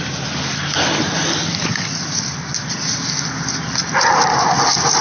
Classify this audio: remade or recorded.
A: recorded